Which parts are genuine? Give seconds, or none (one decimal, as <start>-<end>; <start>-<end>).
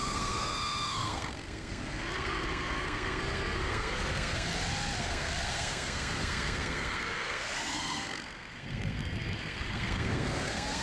4.5-5.0